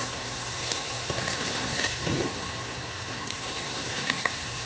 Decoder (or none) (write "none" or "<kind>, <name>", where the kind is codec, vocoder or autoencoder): codec, SNAC